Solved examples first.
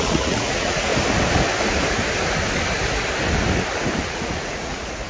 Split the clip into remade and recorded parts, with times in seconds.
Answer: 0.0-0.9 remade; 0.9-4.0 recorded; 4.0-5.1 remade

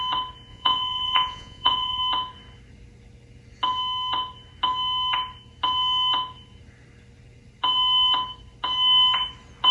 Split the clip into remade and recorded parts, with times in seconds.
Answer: 0.0-0.5 recorded; 0.5-2.0 remade; 2.0-9.7 recorded

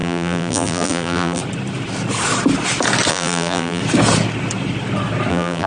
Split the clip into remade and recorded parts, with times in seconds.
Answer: 0.0-1.4 remade; 1.4-3.1 recorded; 3.1-3.8 remade; 3.8-5.3 recorded; 5.3-5.7 remade

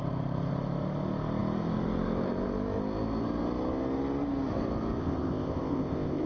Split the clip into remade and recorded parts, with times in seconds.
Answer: 0.0-5.0 recorded; 5.0-6.3 remade

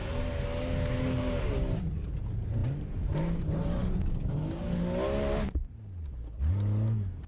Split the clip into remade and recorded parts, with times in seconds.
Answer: 0.0-7.3 recorded

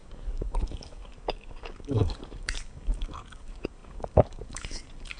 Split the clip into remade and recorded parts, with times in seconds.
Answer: 0.0-5.2 remade